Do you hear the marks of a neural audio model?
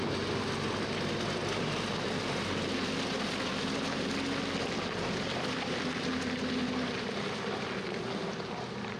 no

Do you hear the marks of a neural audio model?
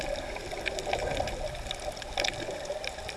yes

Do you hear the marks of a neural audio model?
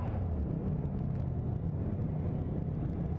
no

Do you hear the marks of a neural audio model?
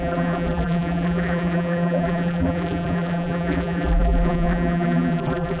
yes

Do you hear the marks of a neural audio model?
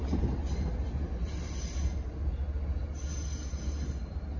no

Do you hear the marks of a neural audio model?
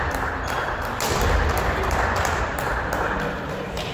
yes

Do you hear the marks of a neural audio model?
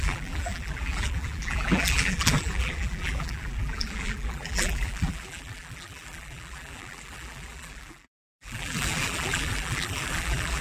yes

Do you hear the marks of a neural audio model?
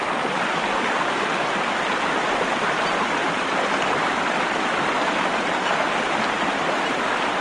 yes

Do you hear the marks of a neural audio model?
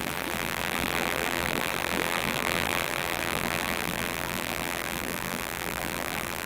yes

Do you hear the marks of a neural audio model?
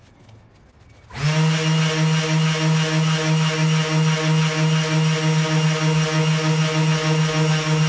no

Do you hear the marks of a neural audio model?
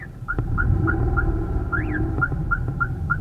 yes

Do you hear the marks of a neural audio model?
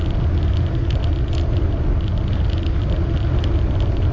no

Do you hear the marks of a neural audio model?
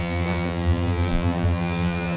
yes